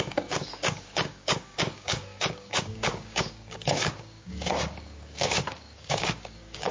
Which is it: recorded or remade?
remade